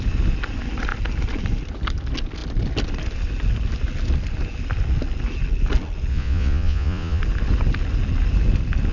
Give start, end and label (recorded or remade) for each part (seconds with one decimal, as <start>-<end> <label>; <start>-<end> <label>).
0.0-6.1 recorded; 6.1-7.2 remade; 7.2-8.9 recorded